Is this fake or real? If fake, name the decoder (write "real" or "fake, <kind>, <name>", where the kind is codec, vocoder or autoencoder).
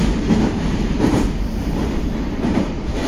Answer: fake, vocoder, BigVGAN v2